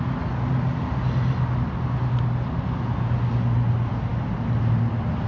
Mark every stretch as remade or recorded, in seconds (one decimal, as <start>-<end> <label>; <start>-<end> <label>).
0.0-5.3 recorded